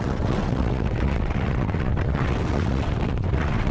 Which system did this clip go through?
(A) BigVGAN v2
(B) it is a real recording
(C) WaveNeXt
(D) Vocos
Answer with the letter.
C